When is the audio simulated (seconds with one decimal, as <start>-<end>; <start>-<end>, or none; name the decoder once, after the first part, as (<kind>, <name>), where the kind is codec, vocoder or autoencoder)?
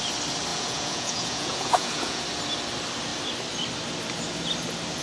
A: 0.5-2.2 (vocoder, Vocos)